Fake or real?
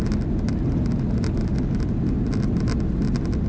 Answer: real